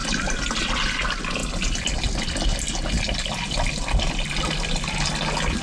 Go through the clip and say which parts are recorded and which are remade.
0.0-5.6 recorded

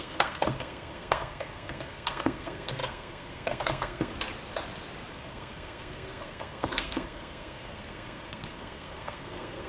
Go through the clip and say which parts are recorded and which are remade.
0.0-4.1 remade; 4.1-5.1 recorded; 5.1-9.7 remade

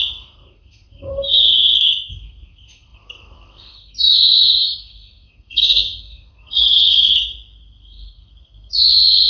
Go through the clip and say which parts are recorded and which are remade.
0.0-9.3 remade

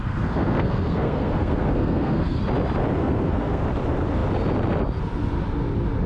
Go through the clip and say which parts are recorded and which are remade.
0.0-2.4 remade; 2.4-3.0 recorded; 3.0-3.6 remade; 3.6-6.1 recorded

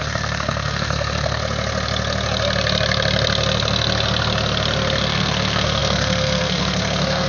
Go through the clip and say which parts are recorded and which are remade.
0.0-1.4 remade; 1.4-5.0 recorded; 5.0-7.3 remade